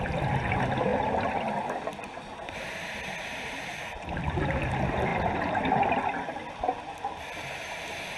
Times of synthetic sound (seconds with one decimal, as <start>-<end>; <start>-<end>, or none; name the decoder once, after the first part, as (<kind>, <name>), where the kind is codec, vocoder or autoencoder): none